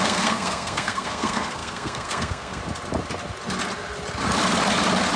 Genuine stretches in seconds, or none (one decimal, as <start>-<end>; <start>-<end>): 2.6-5.2

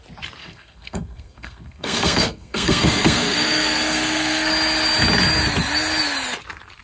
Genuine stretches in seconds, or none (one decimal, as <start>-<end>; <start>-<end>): 0.0-0.4; 4.5-6.8